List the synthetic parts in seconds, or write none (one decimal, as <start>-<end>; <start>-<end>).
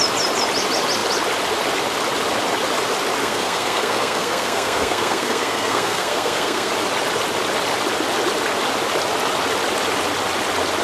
3.2-6.7